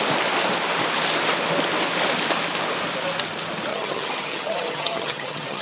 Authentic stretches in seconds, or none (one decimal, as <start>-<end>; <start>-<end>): 0.0-3.7